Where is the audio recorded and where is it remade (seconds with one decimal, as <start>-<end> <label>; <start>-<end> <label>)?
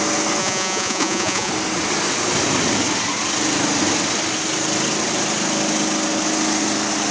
0.0-0.4 recorded; 0.4-1.5 remade; 1.5-7.1 recorded